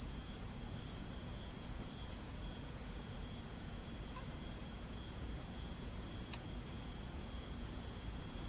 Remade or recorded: remade